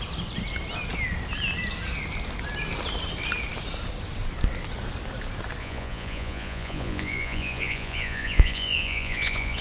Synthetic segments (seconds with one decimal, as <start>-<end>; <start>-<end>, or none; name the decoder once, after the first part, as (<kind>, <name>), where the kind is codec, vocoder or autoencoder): 5.6-9.6 (vocoder, Vocos)